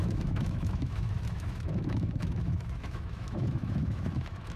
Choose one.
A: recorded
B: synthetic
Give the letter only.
B